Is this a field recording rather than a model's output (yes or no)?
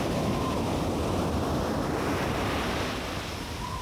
yes